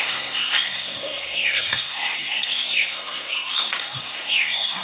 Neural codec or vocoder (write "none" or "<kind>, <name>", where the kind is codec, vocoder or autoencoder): codec, SNAC